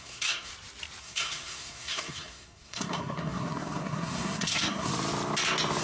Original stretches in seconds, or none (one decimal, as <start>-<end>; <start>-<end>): 0.5-1.0; 4.9-5.8